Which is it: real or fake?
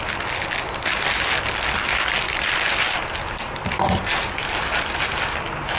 real